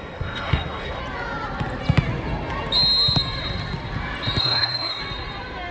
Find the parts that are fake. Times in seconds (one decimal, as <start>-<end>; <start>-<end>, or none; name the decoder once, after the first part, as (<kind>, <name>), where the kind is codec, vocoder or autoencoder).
0.0-1.0 (codec, SNAC); 4.4-5.0